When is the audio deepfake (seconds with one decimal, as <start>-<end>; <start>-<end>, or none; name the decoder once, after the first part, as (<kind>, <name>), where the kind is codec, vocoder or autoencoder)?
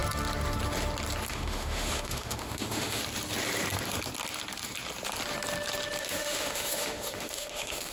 1.3-3.0 (autoencoder, DAC-VAE); 6.0-7.9